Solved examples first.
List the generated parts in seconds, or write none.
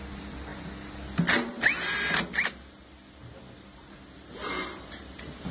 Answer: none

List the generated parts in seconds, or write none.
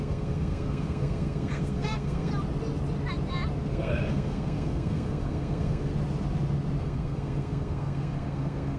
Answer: 0.0-2.3 (codec, SNAC); 3.6-5.9; 6.8-8.8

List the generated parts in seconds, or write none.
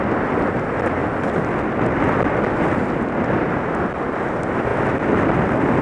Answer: none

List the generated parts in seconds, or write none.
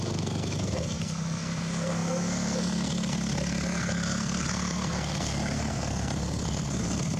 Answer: 0.0-7.2 (codec, SNAC)